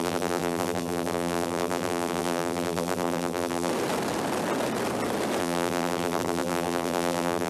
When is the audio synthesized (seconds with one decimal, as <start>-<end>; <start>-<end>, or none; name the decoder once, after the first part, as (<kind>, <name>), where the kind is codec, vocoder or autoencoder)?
0.0-3.7 (vocoder, BigVGAN v2); 5.4-7.5